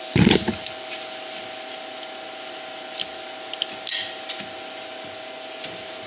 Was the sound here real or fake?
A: real